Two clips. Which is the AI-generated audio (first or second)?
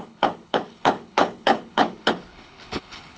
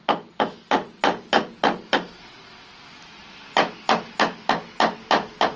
first